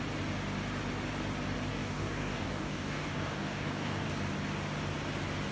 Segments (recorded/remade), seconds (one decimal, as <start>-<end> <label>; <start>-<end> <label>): 0.0-1.7 recorded; 1.7-4.1 remade; 4.1-5.5 recorded